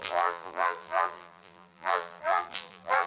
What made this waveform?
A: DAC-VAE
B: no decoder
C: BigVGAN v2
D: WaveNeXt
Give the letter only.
C